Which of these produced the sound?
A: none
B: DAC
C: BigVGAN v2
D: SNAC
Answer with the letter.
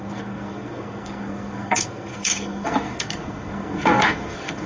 D